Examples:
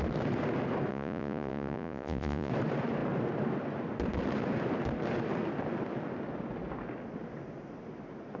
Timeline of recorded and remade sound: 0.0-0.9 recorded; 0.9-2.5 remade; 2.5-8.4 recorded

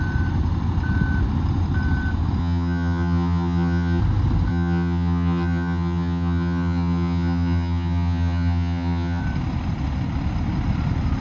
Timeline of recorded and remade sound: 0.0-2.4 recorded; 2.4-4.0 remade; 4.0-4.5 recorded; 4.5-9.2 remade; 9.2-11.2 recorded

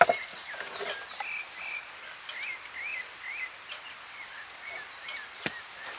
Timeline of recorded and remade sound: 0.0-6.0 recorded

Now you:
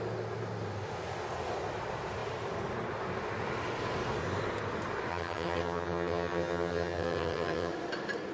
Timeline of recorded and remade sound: 0.0-5.1 recorded; 5.1-7.7 remade; 7.7-8.3 recorded

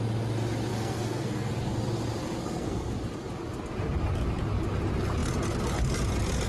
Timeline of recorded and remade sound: 0.0-0.7 recorded; 0.7-1.5 remade; 1.5-2.4 recorded; 2.4-2.9 remade; 2.9-6.5 recorded

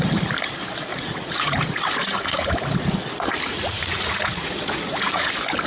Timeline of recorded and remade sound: 0.0-0.9 recorded; 0.9-2.5 remade; 2.5-3.5 recorded; 3.5-5.3 remade; 5.3-5.7 recorded

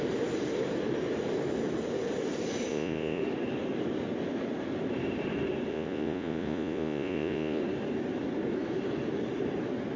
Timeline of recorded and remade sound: 0.0-2.7 recorded; 2.7-3.2 remade; 3.2-5.7 recorded; 5.7-7.6 remade; 7.6-10.0 recorded